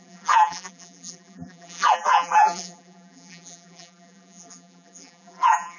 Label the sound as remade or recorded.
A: remade